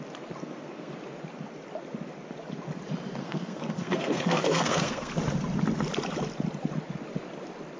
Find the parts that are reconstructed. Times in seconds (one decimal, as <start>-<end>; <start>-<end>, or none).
0.4-0.9; 3.2-5.1

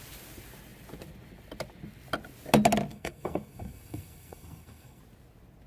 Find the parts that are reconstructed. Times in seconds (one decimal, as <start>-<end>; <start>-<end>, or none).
2.9-5.0

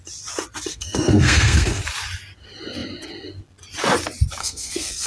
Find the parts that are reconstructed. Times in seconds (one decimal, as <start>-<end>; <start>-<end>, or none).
0.7-1.8; 4.4-5.1

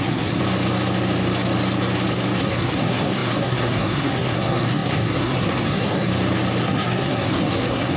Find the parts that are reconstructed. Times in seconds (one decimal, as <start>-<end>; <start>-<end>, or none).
0.0-0.4; 2.4-6.1; 6.6-8.0